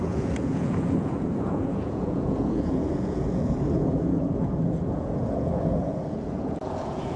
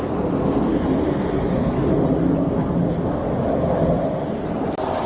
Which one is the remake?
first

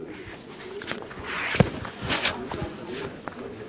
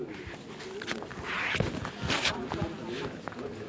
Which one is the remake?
first